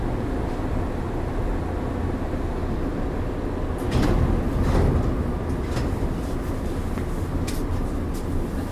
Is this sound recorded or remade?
recorded